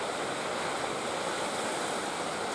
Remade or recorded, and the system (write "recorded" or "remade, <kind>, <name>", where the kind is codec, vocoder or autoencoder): recorded